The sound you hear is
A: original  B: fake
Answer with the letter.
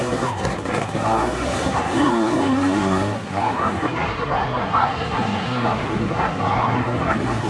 B